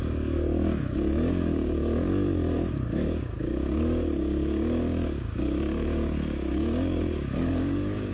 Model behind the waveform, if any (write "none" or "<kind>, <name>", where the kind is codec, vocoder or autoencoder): codec, DAC